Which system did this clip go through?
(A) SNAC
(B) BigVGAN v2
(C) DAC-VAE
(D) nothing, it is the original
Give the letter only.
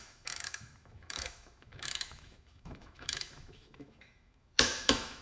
C